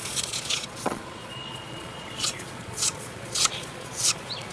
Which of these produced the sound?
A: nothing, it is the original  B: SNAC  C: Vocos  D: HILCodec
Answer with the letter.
C